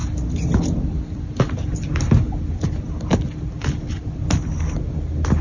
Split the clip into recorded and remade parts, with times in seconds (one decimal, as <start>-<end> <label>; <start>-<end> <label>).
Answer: 0.0-5.4 recorded